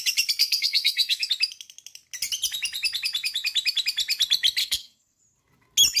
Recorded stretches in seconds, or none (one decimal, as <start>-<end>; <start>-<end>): 0.0-0.4; 1.3-4.6; 5.2-6.0